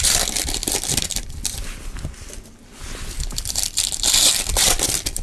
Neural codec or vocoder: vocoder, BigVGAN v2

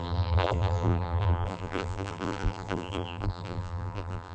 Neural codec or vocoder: vocoder, BigVGAN v2